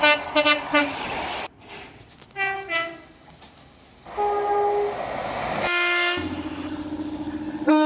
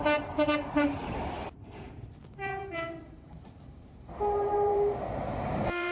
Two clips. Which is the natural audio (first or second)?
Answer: first